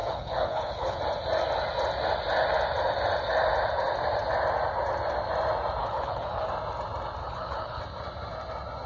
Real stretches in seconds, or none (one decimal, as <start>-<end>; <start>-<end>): 1.0-5.8; 6.5-7.2; 7.8-8.9